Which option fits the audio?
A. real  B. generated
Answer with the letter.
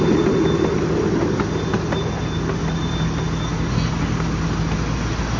A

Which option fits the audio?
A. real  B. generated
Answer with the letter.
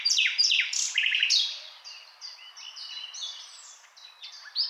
A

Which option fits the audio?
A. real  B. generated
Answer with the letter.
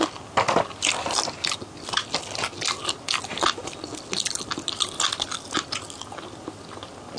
A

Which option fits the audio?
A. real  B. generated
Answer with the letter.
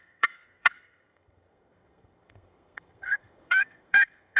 B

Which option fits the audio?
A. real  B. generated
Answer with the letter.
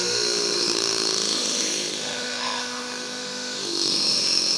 B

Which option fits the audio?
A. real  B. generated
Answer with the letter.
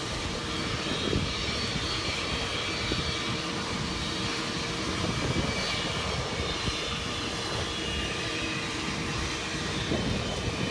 B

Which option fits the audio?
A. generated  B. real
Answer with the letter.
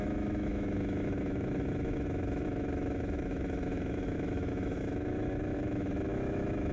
A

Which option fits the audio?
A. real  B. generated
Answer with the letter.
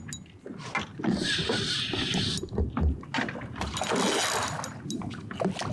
A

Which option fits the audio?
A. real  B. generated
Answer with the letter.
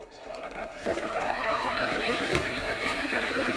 B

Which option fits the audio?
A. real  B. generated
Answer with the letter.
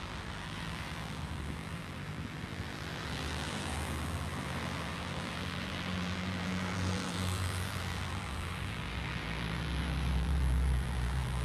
B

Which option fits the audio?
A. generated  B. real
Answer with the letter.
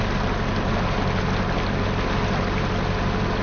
B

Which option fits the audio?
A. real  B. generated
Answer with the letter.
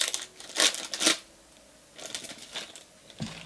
A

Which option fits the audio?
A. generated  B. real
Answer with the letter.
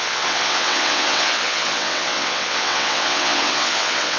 A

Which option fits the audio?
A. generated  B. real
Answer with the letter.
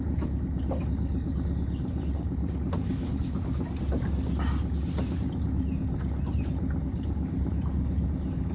B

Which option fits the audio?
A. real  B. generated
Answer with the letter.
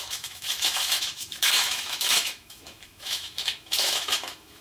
B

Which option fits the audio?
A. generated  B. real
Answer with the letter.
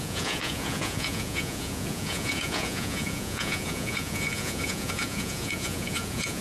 A